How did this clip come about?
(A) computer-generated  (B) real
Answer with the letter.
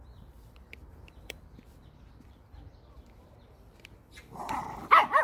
A